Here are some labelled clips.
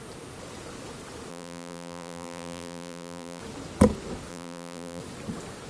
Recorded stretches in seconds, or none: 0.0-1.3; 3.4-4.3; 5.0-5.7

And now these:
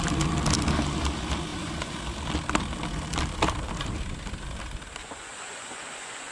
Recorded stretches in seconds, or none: 0.0-1.5; 2.0-5.0

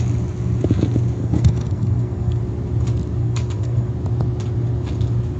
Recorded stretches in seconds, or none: 0.0-1.2; 2.4-3.2; 3.9-5.4

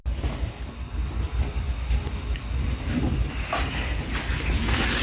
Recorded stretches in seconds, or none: 0.0-5.0

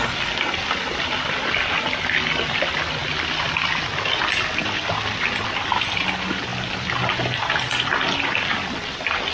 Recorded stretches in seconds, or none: 0.0-9.3